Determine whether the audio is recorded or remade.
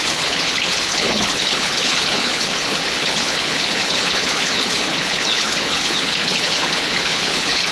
remade